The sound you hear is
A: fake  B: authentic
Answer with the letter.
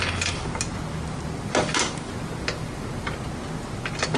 B